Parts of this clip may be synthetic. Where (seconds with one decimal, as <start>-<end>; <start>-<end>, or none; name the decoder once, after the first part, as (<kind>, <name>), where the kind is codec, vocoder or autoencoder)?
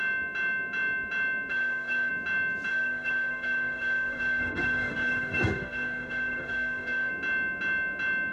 1.5-2.1 (autoencoder, DAC-VAE); 2.7-7.1